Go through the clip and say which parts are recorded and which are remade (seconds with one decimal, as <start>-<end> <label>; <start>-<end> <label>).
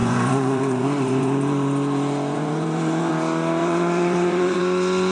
0.0-3.1 remade; 3.1-3.6 recorded; 3.6-4.6 remade; 4.6-5.1 recorded